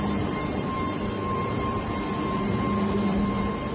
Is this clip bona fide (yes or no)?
no